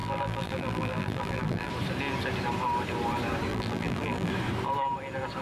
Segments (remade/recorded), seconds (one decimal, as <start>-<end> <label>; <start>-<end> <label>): 0.0-1.7 remade; 1.7-3.5 recorded; 3.5-4.3 remade; 4.3-5.4 recorded